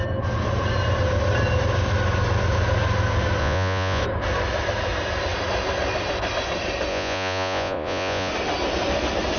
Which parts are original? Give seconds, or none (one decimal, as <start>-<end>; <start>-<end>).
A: 0.0-3.4; 4.0-6.9; 8.3-9.4